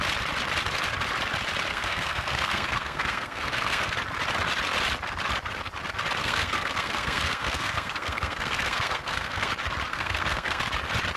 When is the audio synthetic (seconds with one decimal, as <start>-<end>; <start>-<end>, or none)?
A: 1.7-3.9; 6.2-9.5; 9.9-10.6